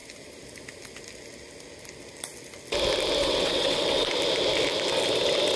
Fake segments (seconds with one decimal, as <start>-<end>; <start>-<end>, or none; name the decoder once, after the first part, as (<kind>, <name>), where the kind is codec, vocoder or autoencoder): 3.2-4.1 (vocoder, WaveNeXt)